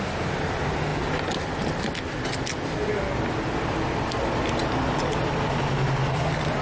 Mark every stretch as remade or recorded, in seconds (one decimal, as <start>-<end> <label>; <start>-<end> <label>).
0.0-6.6 recorded